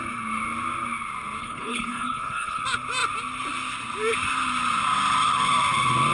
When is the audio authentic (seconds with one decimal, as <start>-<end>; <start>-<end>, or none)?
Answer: 0.0-1.4; 2.6-6.1